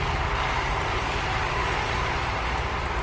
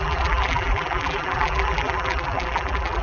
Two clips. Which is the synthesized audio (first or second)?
second